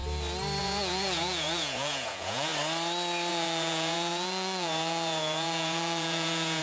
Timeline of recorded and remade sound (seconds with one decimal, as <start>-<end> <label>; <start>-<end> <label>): 0.0-0.6 recorded; 0.6-2.5 remade; 2.5-3.3 recorded; 3.3-6.6 remade